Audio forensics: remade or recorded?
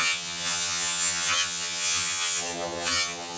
remade